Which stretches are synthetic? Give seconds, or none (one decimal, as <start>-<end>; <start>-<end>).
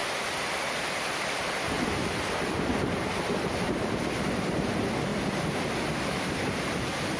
1.1-7.2